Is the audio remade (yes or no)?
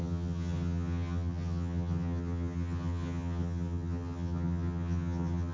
yes